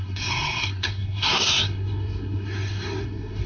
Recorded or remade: remade